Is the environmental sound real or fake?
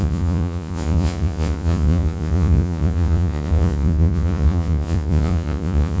fake